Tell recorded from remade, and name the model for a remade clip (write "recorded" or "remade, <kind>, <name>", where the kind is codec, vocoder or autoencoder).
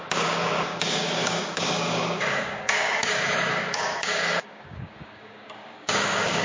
remade, codec, DAC